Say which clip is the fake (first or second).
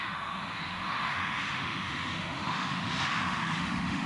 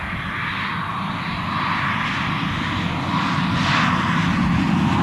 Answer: first